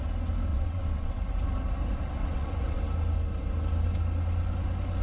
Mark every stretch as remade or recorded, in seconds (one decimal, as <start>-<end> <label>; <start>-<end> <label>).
0.0-0.5 recorded; 0.5-1.2 remade; 1.2-2.2 recorded; 2.2-2.8 remade; 2.8-5.0 recorded